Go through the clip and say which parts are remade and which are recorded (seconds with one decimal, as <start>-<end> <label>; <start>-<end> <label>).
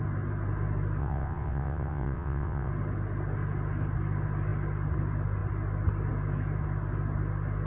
0.0-1.0 recorded; 1.0-2.7 remade; 2.7-7.7 recorded